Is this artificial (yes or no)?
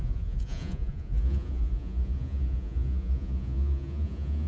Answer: yes